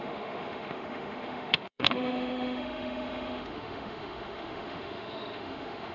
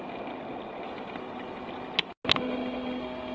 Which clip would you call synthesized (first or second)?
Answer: first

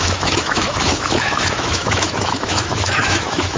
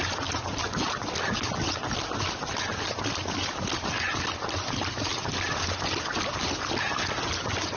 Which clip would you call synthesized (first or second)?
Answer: first